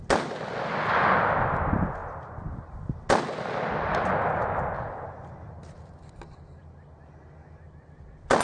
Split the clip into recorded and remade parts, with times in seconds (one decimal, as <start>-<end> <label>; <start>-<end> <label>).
0.0-8.4 recorded